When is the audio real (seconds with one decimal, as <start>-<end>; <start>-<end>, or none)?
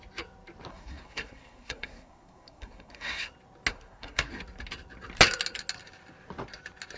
0.0-0.7; 3.3-3.7; 4.3-7.0